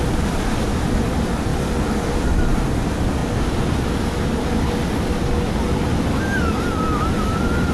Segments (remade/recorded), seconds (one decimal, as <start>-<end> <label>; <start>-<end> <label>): 0.0-3.2 remade; 3.2-6.0 recorded; 6.0-7.7 remade